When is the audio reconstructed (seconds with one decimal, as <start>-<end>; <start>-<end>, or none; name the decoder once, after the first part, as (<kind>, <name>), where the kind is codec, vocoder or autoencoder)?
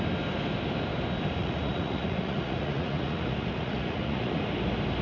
1.4-4.4 (vocoder, Vocos)